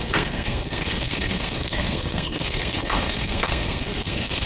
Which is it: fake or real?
fake